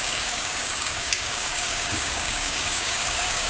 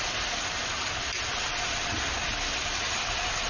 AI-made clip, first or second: first